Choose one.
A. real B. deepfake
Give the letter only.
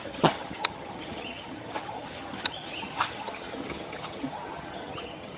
B